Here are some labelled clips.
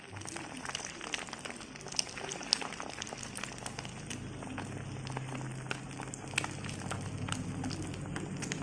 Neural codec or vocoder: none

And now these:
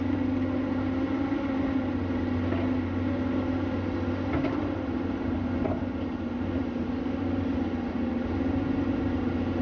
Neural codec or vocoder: none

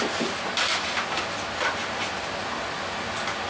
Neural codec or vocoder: none